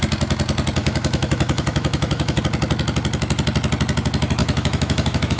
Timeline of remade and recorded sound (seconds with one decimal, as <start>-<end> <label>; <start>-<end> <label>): 0.0-0.8 recorded; 0.8-2.4 remade; 2.4-4.4 recorded; 4.4-5.4 remade